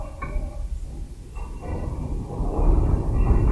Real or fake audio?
real